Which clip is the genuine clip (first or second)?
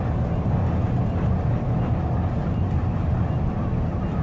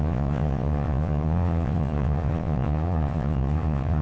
first